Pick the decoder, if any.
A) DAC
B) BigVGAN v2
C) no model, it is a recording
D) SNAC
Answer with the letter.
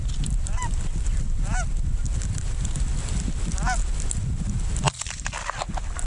C